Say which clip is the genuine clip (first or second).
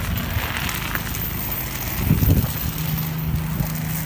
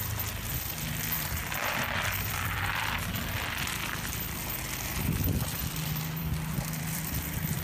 first